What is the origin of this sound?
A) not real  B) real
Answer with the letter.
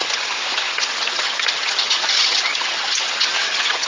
A